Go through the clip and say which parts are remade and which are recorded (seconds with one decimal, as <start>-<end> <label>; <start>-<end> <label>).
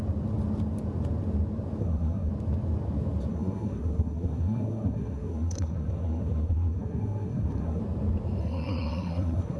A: 0.0-1.8 recorded; 1.8-2.3 remade; 2.3-3.3 recorded; 3.3-7.8 remade; 7.8-8.4 recorded; 8.4-9.6 remade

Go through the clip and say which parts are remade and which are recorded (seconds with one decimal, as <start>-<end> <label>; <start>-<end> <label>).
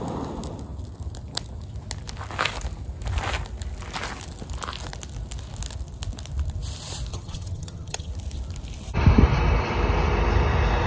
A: 0.0-7.1 recorded; 7.1-8.1 remade; 8.1-10.9 recorded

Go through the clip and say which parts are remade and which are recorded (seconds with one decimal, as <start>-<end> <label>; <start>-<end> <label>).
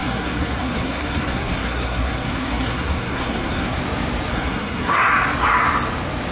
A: 0.0-3.8 remade; 3.8-4.3 recorded; 4.3-5.1 remade; 5.1-6.3 recorded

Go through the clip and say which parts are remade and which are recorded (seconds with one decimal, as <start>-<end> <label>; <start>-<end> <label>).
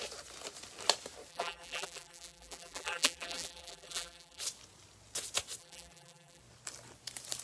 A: 0.0-1.3 recorded; 1.3-4.4 remade; 4.4-5.6 recorded; 5.6-6.4 remade; 6.4-7.4 recorded